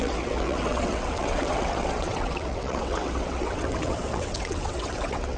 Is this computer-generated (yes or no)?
yes